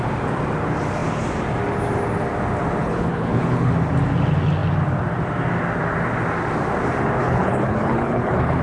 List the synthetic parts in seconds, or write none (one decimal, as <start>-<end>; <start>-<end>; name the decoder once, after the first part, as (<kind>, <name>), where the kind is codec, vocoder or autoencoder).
2.8-3.7 (codec, HILCodec); 7.2-8.6